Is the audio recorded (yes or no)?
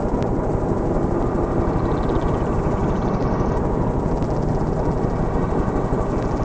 yes